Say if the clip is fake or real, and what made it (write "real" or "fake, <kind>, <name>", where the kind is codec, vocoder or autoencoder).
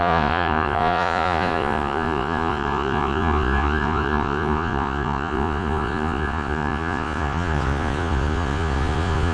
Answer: fake, vocoder, Vocos